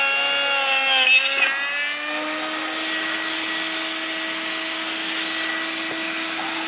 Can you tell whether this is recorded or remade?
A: recorded